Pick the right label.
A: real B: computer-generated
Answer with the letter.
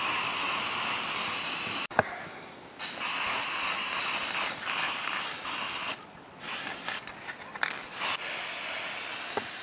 A